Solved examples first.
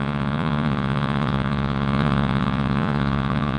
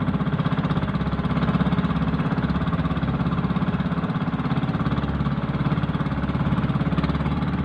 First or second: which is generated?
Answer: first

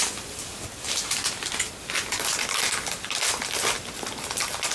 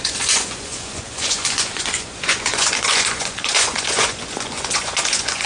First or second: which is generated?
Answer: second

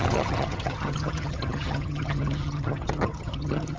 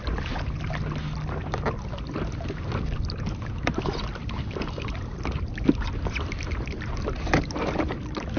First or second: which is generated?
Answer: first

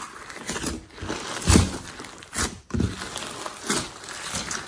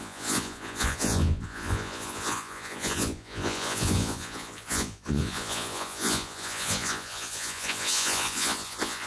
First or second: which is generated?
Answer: second